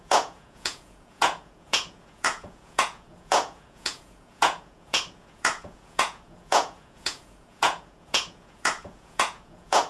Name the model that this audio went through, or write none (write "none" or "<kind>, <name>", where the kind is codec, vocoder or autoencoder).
vocoder, Vocos